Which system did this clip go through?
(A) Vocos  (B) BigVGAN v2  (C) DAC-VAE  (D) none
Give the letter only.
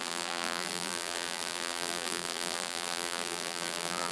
B